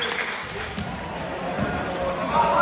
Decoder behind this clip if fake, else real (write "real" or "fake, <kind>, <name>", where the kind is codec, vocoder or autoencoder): real